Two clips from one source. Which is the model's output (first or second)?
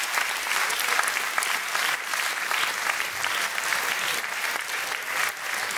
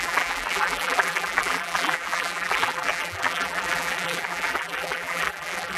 second